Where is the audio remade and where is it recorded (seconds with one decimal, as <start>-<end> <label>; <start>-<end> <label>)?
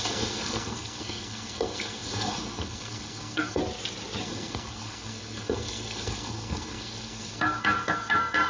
0.0-3.6 remade; 3.6-4.2 recorded; 4.2-8.5 remade